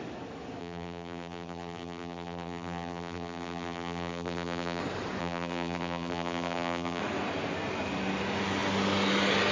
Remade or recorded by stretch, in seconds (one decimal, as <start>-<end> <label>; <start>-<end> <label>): 0.0-0.6 recorded; 0.6-4.8 remade; 4.8-5.2 recorded; 5.2-7.0 remade; 7.0-9.5 recorded